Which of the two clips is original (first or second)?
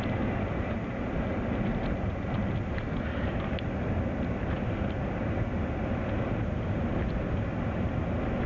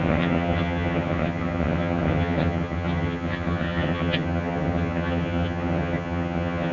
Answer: first